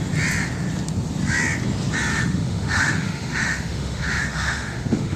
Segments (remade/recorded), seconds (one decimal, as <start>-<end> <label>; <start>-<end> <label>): 0.0-2.1 recorded; 2.1-5.2 remade